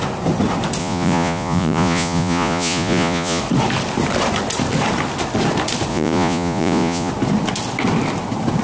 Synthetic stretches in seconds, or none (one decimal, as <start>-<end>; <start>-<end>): 0.8-3.4; 5.9-7.1